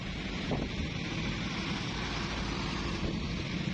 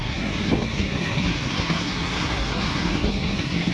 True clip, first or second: first